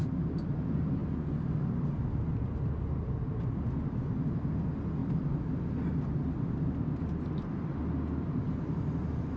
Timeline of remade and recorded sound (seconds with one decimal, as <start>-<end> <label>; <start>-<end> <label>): 0.0-9.4 recorded